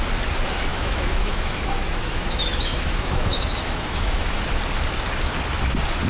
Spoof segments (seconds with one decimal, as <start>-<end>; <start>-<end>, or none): 0.7-4.4